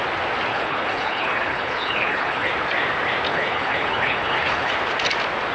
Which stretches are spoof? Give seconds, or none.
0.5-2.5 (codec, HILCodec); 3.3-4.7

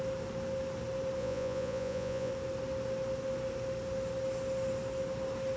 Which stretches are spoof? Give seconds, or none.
1.2-2.3 (vocoder, Vocos)

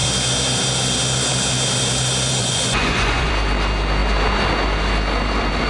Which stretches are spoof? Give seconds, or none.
2.4-3.3 (vocoder, Vocos)